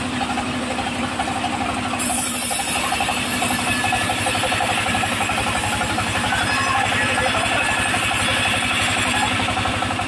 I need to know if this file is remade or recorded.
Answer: recorded